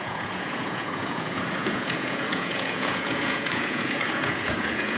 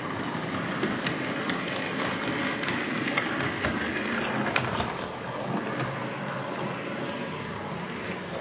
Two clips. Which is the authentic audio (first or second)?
second